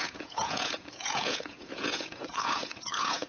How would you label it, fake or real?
fake